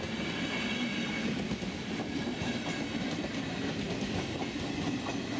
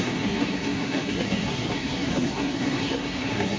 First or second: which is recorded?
first